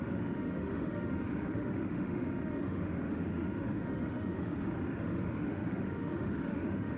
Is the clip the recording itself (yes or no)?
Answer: no